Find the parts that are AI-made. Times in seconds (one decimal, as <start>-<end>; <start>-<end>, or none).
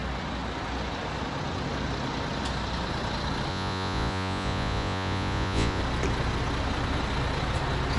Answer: 3.5-5.8